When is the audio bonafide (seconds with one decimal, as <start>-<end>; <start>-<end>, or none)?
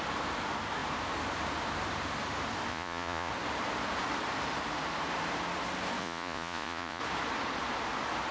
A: 0.0-2.7; 3.3-6.0; 7.0-8.3